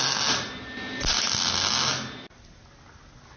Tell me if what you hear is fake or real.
real